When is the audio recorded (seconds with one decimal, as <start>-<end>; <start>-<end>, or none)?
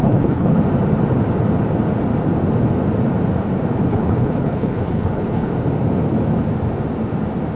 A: 0.6-3.9; 5.5-7.6